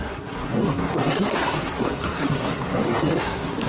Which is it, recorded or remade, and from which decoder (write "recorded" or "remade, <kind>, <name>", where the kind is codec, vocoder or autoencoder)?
remade, codec, SNAC